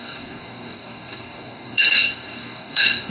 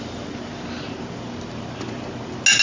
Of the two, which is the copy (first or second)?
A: first